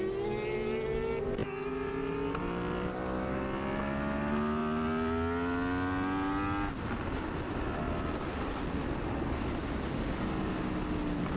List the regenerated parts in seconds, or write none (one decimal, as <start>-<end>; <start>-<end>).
none